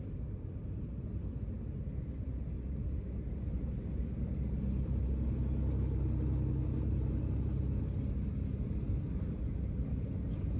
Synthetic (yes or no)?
no